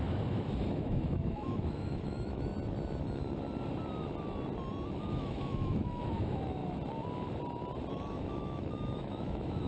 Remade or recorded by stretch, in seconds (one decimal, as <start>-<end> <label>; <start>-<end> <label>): 0.0-2.5 remade; 2.5-5.0 recorded; 5.0-6.6 remade; 6.6-7.9 recorded; 7.9-9.7 remade